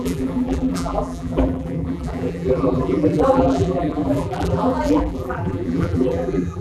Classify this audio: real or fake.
fake